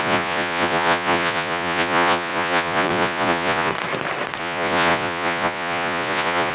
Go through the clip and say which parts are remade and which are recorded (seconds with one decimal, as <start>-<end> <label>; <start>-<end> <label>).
0.0-3.7 remade; 3.7-4.4 recorded; 4.4-6.5 remade